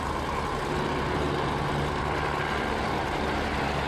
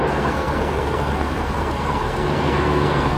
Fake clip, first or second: second